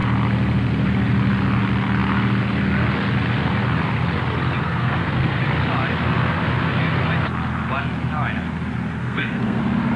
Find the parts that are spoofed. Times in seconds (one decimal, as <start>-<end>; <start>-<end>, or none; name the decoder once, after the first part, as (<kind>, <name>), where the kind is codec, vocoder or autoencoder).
4.6-5.4 (codec, SNAC); 9.0-9.6